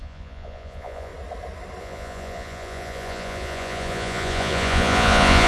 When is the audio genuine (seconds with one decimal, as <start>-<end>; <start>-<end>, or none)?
1.1-1.8